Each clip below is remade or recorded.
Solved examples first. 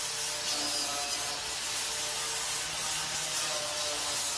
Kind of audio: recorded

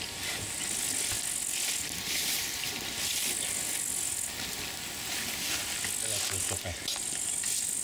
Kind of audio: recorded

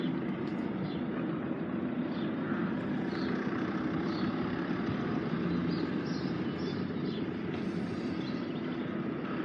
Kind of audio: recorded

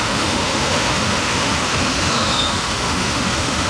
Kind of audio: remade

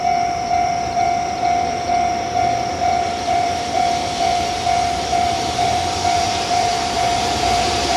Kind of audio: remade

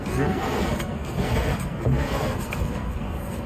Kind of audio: remade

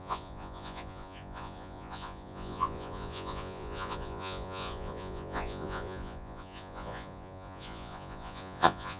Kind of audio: remade